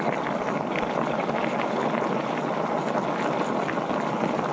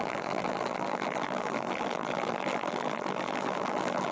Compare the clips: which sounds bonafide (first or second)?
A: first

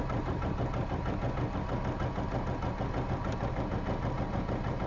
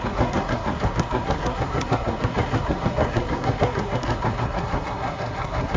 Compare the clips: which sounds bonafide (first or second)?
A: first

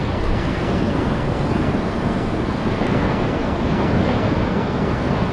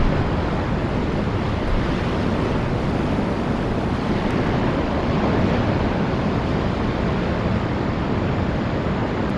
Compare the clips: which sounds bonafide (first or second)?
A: second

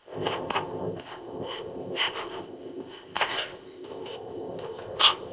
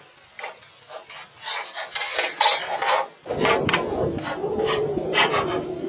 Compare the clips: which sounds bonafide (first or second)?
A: second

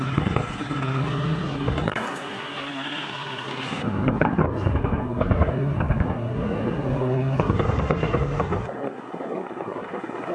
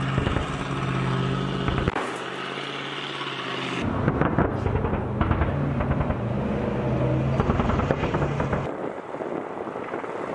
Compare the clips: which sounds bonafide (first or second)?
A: second